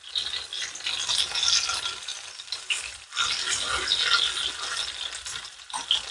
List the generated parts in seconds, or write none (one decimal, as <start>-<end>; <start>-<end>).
none